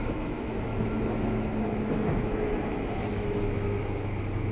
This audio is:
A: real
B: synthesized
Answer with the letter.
B